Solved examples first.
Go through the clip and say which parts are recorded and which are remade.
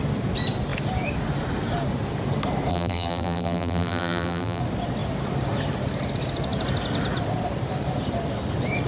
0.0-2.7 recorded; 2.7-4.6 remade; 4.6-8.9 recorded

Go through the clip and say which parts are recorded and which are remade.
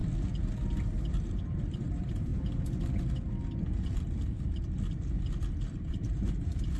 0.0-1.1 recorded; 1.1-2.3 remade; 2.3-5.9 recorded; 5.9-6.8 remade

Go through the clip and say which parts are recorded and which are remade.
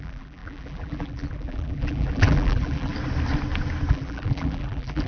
0.0-2.9 remade; 2.9-3.9 recorded; 3.9-5.1 remade